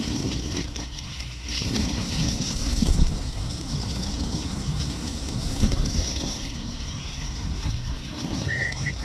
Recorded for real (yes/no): no